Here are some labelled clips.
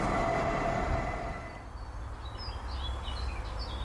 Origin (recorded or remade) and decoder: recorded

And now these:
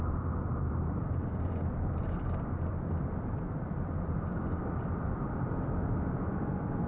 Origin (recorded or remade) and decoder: remade, vocoder, BigVGAN v2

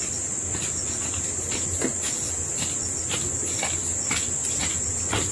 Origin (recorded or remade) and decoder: recorded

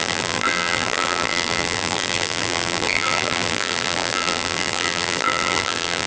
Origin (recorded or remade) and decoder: remade, vocoder, BigVGAN v2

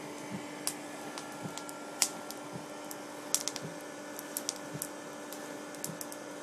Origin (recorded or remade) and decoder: recorded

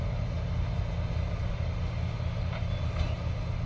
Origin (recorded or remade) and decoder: recorded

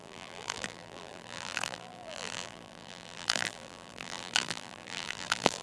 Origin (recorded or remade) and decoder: remade, vocoder, BigVGAN v2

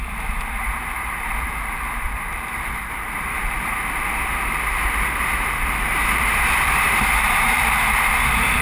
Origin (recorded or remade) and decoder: remade, vocoder, BigVGAN v2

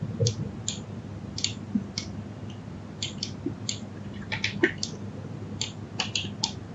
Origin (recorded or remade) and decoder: recorded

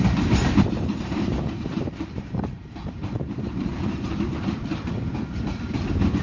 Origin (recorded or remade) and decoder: remade, vocoder, BigVGAN v2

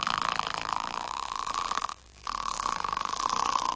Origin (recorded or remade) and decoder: remade, vocoder, BigVGAN v2